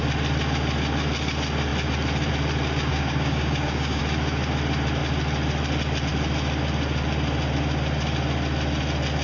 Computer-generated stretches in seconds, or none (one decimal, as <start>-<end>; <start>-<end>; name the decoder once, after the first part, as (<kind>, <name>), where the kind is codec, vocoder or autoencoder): 2.9-4.0 (codec, DAC)